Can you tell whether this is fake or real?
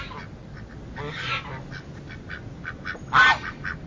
real